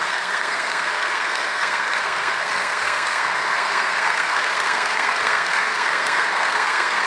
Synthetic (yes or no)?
yes